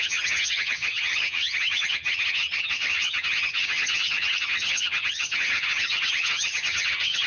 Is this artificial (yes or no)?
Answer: yes